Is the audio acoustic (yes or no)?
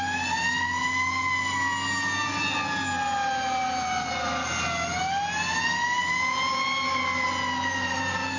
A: yes